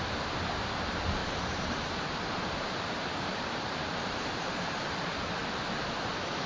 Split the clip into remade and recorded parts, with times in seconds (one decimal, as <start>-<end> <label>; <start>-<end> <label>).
0.0-1.2 recorded; 1.2-4.6 remade; 4.6-6.5 recorded